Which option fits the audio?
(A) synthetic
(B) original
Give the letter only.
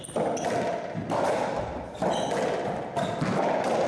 B